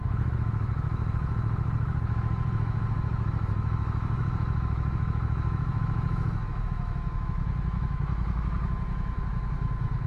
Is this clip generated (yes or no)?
yes